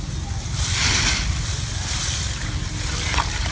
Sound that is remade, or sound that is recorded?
recorded